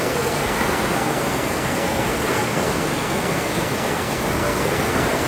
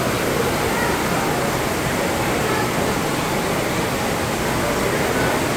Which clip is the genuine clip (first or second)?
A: second